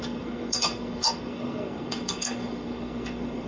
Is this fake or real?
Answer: fake